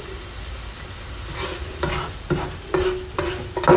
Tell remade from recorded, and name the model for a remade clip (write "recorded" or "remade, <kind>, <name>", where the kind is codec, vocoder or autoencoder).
recorded